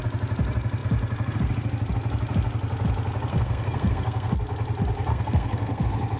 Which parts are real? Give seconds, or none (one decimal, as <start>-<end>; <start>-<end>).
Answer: 0.0-3.3; 4.3-5.1; 5.8-6.2